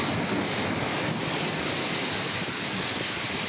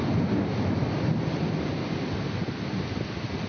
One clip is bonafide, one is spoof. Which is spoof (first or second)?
first